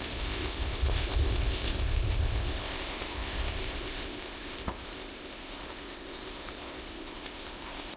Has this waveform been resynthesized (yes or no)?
yes